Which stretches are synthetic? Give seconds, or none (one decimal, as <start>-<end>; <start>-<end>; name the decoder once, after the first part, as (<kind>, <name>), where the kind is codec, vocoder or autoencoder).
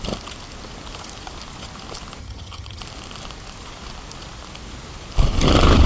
2.2-2.8 (vocoder, HiFi-GAN)